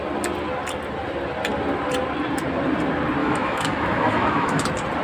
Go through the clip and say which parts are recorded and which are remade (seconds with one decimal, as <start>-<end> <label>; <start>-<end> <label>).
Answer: 0.0-3.2 recorded; 3.2-4.6 remade; 4.6-5.0 recorded